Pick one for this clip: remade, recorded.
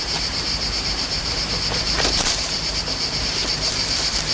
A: remade